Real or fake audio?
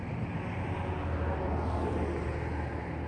real